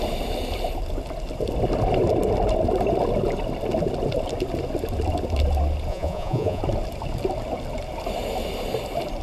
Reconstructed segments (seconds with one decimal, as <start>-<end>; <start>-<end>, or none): 5.9-6.6